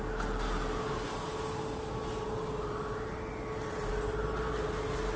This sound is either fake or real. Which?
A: real